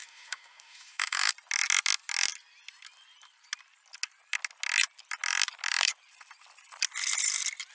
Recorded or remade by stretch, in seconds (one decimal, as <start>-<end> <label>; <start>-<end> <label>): 0.0-1.3 remade; 1.3-7.7 recorded